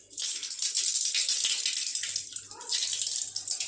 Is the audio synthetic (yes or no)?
no